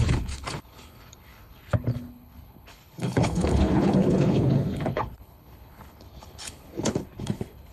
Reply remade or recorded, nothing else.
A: remade